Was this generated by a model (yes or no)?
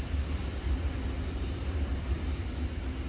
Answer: no